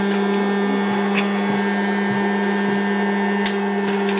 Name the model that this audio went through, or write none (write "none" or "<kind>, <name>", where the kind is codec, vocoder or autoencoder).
none